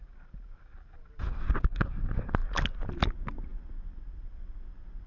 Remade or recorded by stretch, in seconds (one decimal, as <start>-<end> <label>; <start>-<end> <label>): 0.0-5.1 recorded